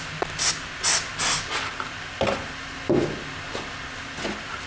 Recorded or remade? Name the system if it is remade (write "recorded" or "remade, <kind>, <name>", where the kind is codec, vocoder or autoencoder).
recorded